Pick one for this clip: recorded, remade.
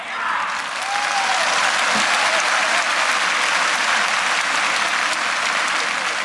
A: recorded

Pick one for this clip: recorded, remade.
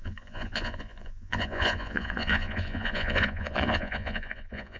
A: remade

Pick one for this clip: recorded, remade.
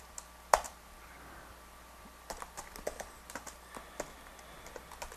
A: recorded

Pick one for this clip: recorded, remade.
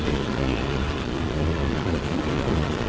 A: remade